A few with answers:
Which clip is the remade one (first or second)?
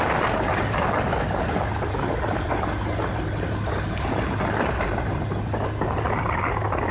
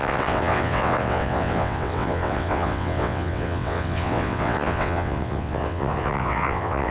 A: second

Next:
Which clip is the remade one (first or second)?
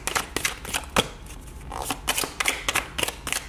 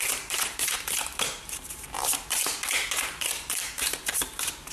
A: second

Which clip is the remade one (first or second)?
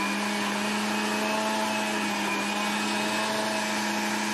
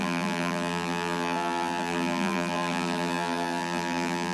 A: second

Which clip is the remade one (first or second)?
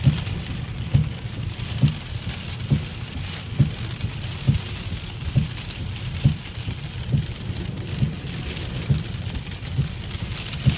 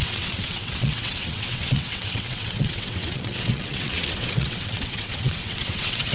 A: second